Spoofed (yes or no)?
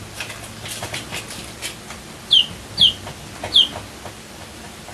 no